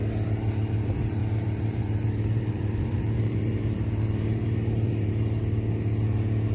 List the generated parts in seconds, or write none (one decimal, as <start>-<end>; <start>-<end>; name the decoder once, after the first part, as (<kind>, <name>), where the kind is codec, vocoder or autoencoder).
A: 1.2-5.1 (vocoder, BigVGAN v2)